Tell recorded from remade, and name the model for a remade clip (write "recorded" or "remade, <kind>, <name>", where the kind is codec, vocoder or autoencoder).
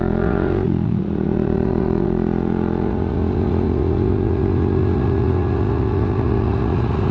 remade, vocoder, Vocos